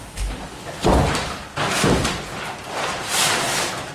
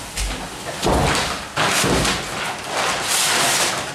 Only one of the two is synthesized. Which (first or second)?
first